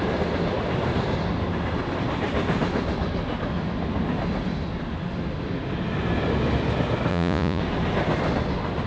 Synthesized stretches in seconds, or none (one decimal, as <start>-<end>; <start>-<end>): 7.1-7.6